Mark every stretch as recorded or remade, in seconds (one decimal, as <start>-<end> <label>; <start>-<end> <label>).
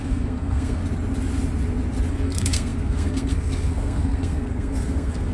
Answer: 0.0-0.8 remade; 0.8-2.1 recorded; 2.1-5.3 remade